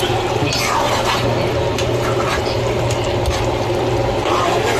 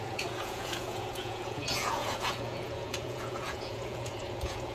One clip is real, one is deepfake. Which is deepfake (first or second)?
second